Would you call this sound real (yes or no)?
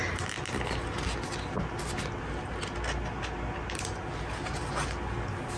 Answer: yes